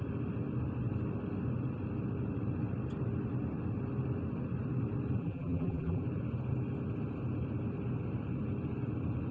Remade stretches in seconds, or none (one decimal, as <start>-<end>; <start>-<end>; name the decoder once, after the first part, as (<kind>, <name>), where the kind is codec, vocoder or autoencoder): 5.2-6.0 (vocoder, BigVGAN v2)